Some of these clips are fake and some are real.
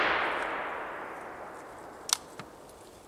real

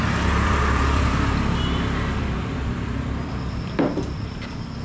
fake